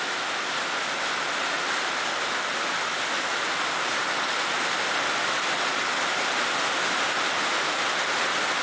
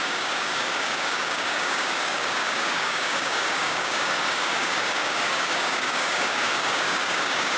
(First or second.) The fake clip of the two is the second